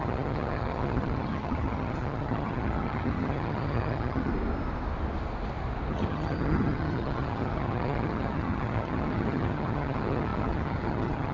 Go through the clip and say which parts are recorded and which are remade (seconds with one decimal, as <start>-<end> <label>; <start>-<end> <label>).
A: 0.0-4.3 remade; 4.3-5.9 recorded; 5.9-11.3 remade